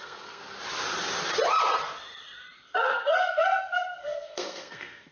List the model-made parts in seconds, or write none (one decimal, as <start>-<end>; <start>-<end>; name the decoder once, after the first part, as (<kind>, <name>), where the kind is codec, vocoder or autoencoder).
0.0-0.4 (codec, SNAC); 2.8-5.1